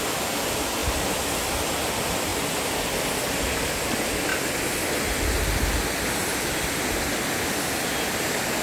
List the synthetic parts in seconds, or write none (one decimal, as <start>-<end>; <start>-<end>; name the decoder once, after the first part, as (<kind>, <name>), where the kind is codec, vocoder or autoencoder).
none